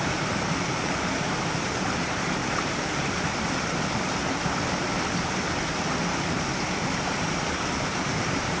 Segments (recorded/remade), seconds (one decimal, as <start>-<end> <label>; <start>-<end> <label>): 0.0-2.4 remade; 2.4-6.1 recorded; 6.1-8.6 remade